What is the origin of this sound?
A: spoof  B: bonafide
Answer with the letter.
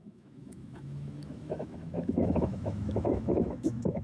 A